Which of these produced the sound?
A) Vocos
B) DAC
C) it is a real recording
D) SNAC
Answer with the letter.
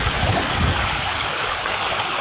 B